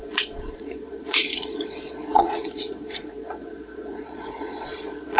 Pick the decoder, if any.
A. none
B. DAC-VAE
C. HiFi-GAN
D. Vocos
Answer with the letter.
D